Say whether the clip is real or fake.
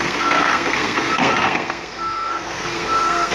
fake